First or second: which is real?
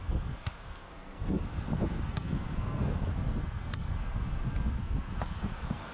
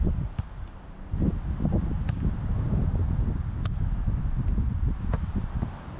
second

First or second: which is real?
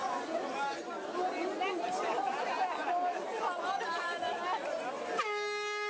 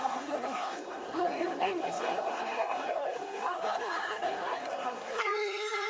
first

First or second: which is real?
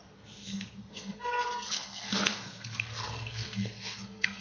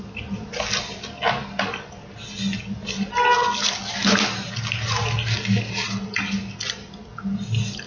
second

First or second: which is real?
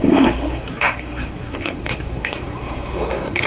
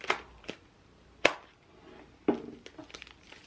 second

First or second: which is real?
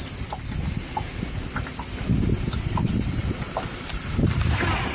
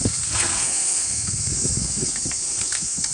first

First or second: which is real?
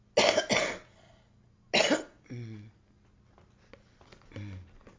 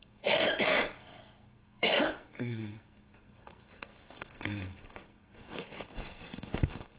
first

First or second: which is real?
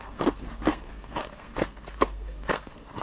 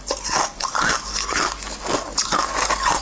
second